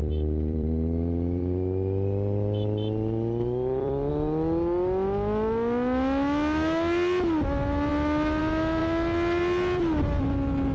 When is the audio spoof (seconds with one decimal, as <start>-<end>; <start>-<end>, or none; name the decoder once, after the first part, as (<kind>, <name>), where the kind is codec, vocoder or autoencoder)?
0.0-4.1 (vocoder, BigVGAN v2)